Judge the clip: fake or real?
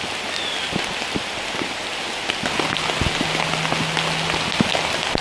real